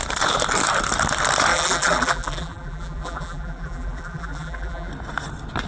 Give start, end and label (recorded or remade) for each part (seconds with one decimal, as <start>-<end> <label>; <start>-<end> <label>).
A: 0.0-1.5 recorded; 1.5-4.9 remade; 4.9-5.7 recorded